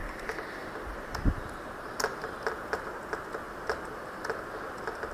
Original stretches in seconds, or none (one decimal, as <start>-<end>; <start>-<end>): 0.0-5.1